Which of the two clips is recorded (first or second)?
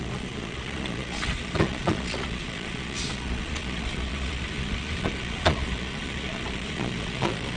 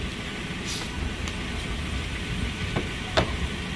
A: second